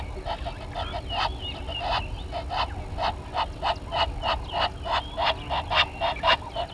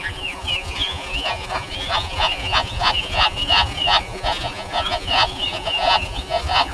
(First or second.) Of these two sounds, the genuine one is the first